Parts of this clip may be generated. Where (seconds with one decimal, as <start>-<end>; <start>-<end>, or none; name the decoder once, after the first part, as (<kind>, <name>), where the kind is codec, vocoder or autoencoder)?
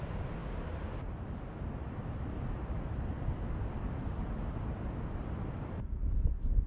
none